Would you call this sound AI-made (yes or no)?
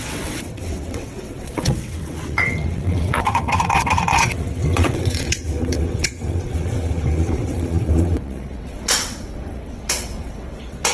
yes